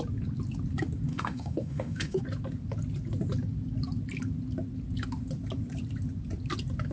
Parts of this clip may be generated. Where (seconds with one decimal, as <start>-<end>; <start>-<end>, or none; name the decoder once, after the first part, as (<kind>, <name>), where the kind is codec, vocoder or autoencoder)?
1.1-2.2 (autoencoder, DAC-VAE)